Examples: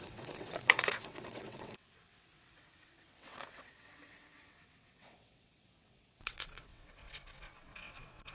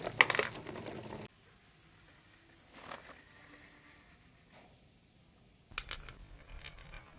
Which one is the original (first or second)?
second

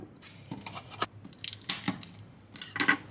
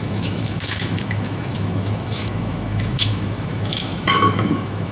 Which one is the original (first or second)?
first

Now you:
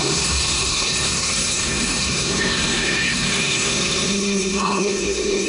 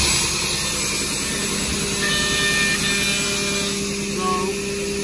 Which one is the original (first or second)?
second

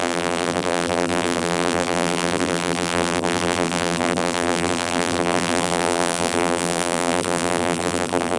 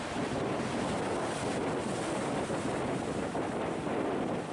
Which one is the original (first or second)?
second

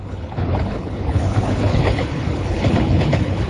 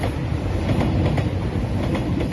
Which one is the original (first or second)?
second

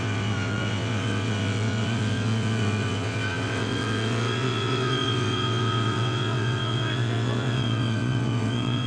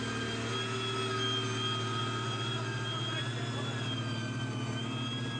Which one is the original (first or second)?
second